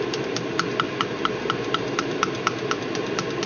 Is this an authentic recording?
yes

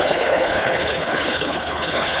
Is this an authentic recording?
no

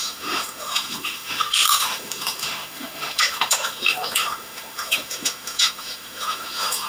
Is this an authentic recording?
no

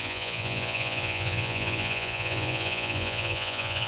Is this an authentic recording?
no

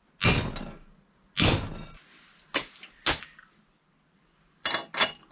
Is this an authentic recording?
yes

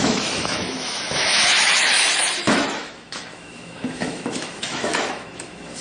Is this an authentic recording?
no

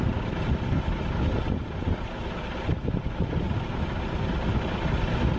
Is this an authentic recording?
yes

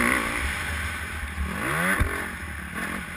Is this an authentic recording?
yes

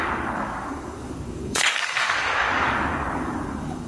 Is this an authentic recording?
no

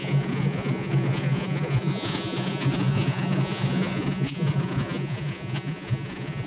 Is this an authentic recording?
no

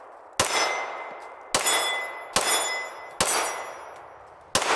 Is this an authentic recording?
yes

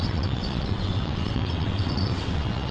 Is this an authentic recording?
no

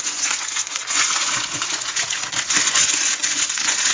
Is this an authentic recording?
no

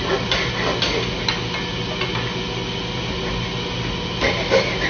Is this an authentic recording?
yes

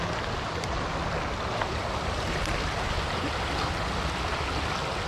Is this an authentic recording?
yes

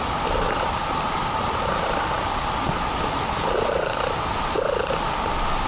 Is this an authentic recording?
no